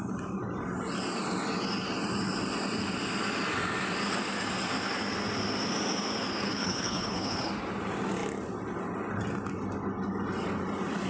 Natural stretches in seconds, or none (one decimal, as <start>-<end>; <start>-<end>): 0.0-6.4; 7.5-11.1